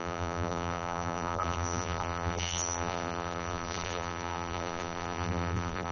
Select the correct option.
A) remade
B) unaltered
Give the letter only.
A